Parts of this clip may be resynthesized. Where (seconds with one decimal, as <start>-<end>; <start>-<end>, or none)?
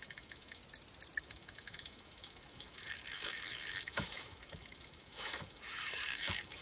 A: 0.0-0.6; 1.2-6.6